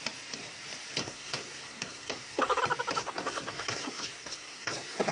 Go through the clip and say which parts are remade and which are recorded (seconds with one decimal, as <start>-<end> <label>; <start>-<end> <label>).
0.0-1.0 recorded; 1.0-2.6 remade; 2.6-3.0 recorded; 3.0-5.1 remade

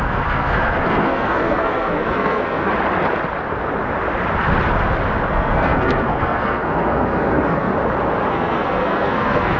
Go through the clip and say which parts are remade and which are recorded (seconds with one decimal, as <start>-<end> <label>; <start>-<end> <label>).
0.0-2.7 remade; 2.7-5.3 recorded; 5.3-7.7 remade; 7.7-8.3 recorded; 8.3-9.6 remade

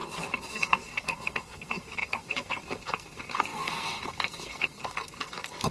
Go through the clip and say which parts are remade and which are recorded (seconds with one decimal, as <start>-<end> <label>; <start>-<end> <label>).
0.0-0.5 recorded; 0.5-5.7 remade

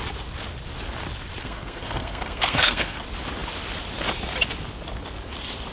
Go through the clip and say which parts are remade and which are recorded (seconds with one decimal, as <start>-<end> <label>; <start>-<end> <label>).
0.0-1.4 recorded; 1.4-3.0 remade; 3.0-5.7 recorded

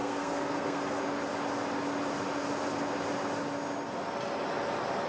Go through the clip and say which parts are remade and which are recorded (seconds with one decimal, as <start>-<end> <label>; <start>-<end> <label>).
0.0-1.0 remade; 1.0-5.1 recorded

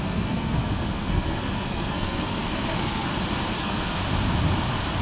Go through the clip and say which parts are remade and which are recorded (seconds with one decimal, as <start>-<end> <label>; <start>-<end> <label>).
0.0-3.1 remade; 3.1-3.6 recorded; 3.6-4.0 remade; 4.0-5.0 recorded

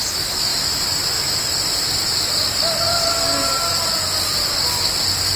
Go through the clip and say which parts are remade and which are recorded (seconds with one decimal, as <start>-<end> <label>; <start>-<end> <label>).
0.0-5.4 recorded